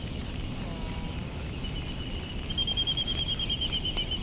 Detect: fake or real real